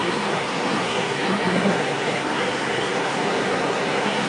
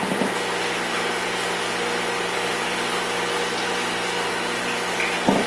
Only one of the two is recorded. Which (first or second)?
second